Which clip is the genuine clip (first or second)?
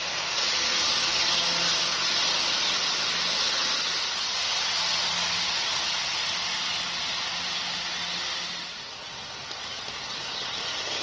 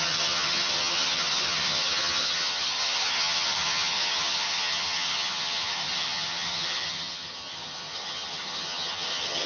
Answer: first